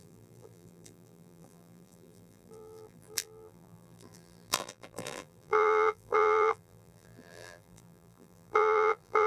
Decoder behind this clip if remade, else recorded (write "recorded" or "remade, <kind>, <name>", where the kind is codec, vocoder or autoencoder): remade, vocoder, BigVGAN v2